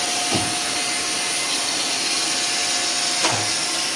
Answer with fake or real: real